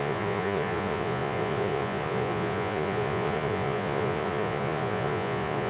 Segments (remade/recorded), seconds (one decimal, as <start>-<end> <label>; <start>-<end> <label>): 0.0-5.7 remade